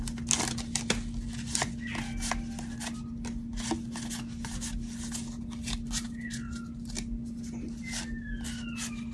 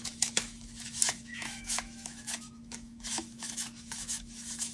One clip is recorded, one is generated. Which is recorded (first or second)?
first